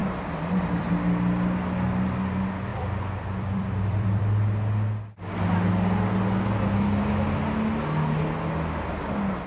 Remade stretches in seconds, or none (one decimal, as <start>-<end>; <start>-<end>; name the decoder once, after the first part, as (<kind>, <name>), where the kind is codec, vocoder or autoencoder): 0.0-0.9 (vocoder, BigVGAN v2); 2.7-4.2